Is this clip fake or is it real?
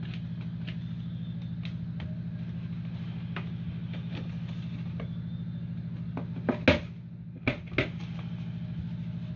real